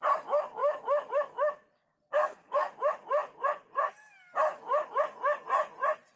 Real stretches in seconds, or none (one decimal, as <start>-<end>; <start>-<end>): 0.0-2.2; 2.7-6.2